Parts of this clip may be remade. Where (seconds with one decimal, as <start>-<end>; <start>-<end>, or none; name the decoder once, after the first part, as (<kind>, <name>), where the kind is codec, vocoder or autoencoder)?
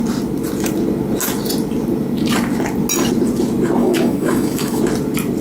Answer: 3.8-4.8 (autoencoder, DAC-VAE)